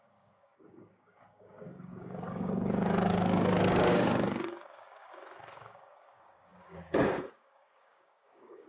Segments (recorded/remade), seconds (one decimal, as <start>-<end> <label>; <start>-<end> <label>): 0.0-8.7 remade